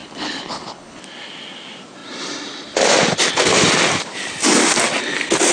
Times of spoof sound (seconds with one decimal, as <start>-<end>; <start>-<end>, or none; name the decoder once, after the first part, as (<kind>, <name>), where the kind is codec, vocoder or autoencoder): 0.0-1.0 (codec, HILCodec)